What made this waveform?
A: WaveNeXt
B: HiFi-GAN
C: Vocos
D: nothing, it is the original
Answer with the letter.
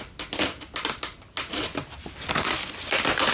D